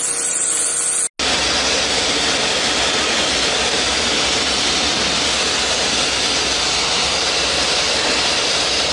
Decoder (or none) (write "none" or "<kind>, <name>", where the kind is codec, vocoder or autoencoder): none